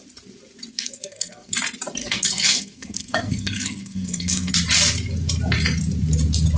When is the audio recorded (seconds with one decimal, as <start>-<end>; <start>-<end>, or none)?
0.0-0.7; 1.5-2.0; 4.5-6.6